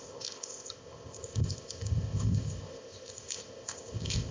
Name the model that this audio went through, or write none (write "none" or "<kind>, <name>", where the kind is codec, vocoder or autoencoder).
codec, ZipCodec